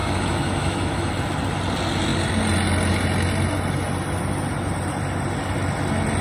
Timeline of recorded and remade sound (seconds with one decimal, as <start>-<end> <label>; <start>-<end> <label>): 0.0-1.1 remade; 1.1-6.2 recorded